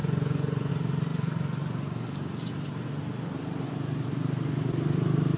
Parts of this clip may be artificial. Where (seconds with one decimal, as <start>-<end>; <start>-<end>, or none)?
0.0-0.7